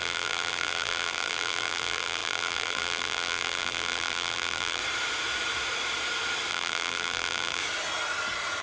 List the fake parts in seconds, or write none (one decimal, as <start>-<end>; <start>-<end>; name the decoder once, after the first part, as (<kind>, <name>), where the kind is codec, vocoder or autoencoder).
0.0-4.8 (vocoder, BigVGAN v2); 6.5-7.6

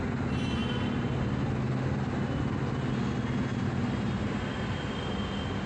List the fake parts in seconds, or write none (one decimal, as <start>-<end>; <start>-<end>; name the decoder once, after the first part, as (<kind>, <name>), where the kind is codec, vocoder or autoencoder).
3.5-4.4 (vocoder, BigVGAN v2)

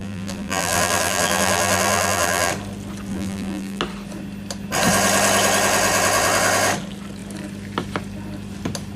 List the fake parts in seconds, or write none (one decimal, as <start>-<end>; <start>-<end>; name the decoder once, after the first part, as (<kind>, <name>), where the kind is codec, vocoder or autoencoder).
0.0-2.5 (vocoder, BigVGAN v2); 3.1-3.8

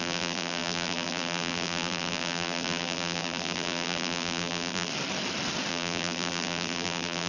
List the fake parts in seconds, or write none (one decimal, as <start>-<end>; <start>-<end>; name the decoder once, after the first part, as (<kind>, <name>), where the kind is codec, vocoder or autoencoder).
0.0-4.9 (vocoder, BigVGAN v2); 5.7-7.3

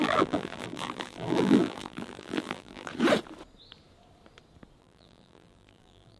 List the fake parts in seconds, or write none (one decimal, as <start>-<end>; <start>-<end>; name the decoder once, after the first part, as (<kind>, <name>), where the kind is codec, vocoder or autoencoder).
0.0-2.9 (vocoder, BigVGAN v2); 4.8-6.2

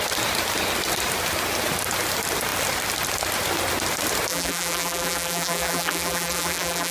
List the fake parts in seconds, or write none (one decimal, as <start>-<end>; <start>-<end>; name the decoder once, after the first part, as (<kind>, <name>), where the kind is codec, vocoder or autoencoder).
4.3-6.9 (vocoder, BigVGAN v2)